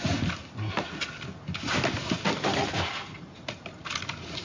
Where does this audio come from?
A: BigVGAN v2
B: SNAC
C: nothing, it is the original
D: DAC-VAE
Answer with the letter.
C